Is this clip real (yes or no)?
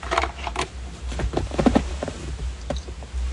no